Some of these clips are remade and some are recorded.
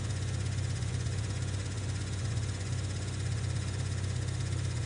remade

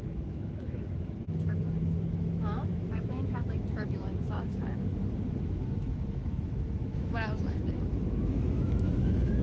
remade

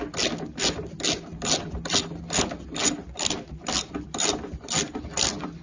recorded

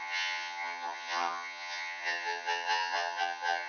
remade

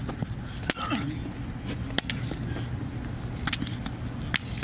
recorded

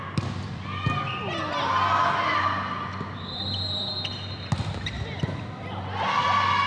recorded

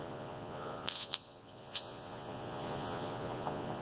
remade